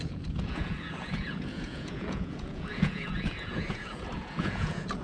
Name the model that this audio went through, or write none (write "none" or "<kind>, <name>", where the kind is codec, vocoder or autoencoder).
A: vocoder, Vocos